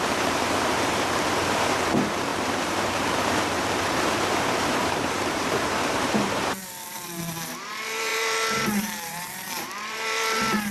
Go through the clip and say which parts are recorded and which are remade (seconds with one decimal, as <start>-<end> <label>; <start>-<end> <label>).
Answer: 0.0-10.7 remade